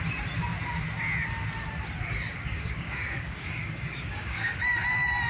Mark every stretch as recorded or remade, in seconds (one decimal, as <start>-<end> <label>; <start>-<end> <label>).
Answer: 0.0-2.3 recorded; 2.3-4.5 remade; 4.5-5.3 recorded